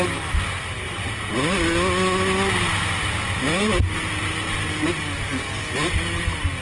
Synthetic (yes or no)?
no